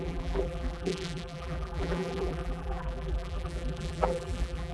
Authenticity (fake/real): fake